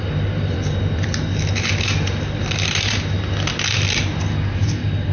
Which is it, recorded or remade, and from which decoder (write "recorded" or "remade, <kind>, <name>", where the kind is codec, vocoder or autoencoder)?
recorded